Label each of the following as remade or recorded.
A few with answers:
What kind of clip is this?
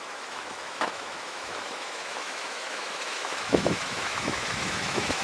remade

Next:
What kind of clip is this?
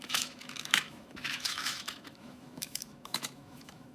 remade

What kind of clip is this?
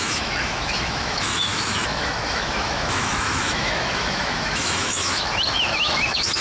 remade